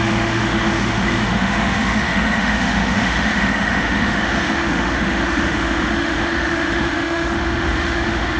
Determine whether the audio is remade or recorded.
remade